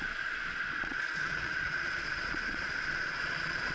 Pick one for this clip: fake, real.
fake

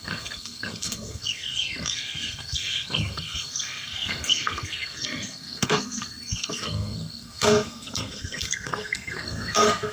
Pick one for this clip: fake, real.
fake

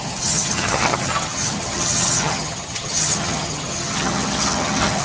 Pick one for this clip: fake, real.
fake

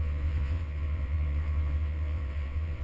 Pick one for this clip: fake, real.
fake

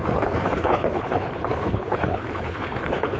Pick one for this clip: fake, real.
fake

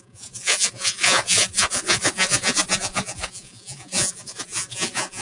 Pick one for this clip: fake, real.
fake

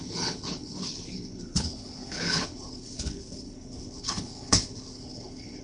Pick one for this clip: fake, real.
fake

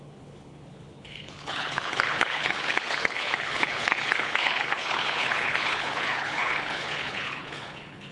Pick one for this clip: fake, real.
fake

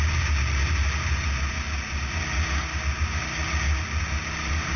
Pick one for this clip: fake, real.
real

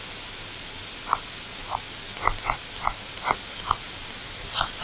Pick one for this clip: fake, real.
real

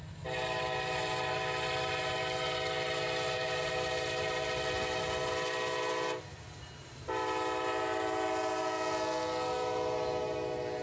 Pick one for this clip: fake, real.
real